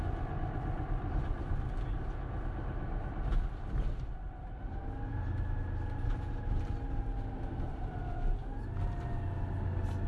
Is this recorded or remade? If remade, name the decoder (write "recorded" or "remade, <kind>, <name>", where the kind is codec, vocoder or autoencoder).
recorded